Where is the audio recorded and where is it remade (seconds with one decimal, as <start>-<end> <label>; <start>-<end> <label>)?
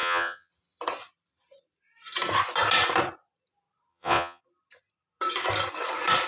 0.0-0.5 remade; 0.5-3.9 recorded; 3.9-4.4 remade; 4.4-6.3 recorded